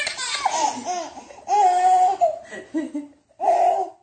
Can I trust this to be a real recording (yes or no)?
yes